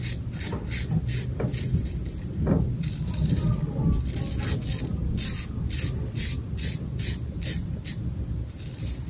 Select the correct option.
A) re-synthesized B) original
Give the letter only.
B